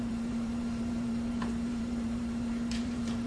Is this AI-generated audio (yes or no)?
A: yes